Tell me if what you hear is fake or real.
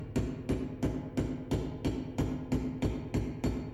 real